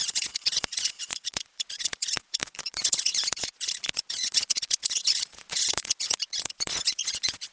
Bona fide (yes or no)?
no